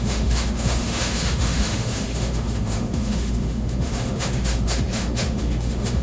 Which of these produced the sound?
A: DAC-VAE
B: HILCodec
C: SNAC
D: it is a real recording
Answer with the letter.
A